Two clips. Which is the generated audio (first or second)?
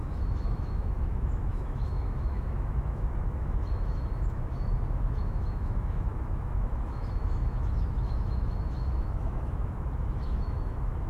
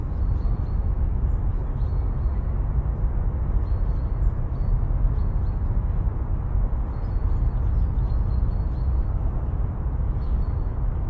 first